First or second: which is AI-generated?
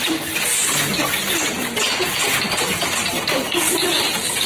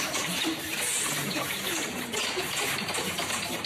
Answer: second